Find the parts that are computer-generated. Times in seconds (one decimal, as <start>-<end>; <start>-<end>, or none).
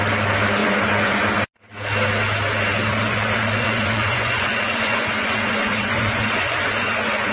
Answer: 0.6-1.3; 2.9-7.3